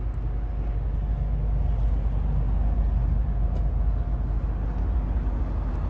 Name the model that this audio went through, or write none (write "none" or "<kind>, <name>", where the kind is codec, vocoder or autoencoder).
none